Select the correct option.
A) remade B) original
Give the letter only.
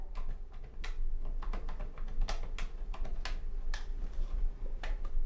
B